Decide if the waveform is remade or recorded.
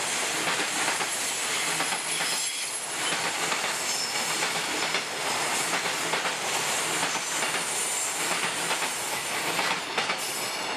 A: recorded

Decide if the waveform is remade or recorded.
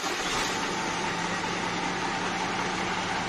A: recorded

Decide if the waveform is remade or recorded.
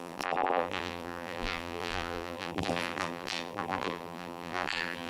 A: remade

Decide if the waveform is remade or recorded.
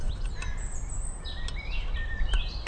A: recorded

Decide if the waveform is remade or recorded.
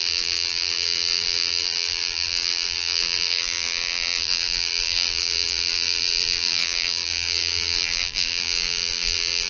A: remade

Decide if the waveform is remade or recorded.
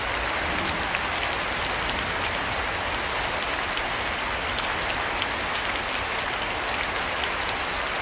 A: recorded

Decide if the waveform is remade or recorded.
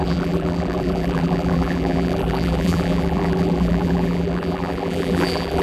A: remade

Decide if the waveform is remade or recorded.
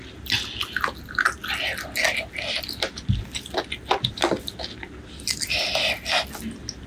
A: recorded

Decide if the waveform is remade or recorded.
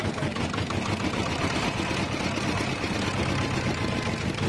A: recorded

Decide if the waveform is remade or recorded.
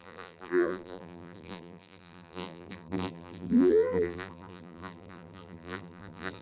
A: remade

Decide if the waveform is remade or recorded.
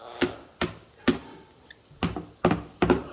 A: recorded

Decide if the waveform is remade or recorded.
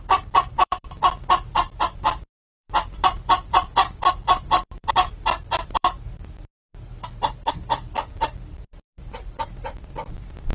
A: remade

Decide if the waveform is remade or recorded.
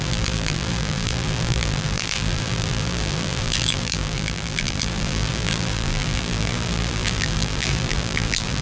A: remade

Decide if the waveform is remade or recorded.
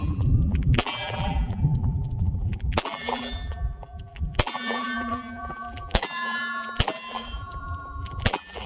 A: remade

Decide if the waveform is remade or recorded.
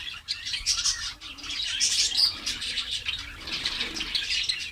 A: remade